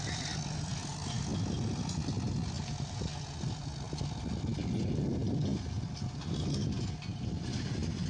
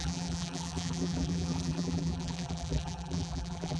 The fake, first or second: second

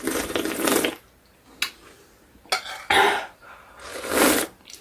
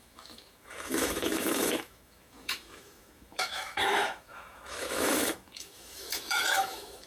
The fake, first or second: second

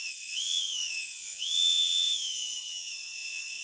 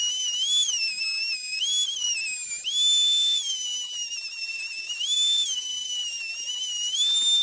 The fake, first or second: first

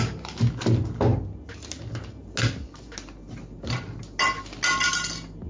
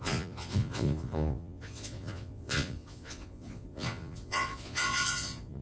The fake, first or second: second